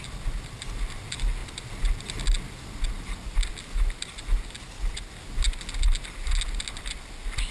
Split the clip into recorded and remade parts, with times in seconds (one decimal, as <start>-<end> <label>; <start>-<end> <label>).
0.0-7.5 recorded